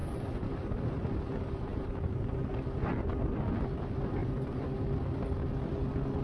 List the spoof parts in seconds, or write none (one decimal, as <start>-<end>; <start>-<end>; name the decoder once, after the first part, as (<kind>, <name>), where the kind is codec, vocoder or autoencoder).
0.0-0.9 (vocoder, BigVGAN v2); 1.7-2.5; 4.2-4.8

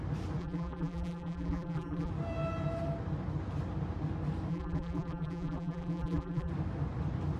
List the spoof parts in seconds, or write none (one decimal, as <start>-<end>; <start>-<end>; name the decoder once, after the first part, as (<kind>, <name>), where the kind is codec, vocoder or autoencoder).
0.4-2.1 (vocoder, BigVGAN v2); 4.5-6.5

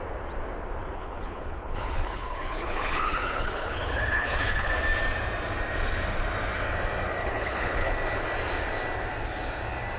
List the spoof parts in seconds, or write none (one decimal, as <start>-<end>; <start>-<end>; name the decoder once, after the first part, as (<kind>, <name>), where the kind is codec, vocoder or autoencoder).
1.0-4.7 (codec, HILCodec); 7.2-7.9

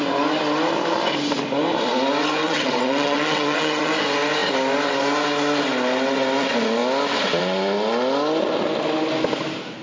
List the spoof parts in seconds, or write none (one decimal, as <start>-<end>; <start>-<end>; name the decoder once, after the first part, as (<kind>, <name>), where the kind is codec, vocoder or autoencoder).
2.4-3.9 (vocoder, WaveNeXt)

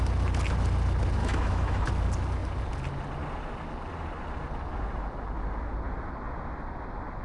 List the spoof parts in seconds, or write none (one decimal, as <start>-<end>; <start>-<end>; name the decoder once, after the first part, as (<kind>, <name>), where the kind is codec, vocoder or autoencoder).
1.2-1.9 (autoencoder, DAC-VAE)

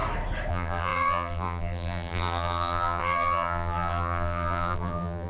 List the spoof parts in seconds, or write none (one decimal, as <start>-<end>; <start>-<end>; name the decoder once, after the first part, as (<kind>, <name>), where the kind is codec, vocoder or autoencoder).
0.5-5.3 (vocoder, BigVGAN v2)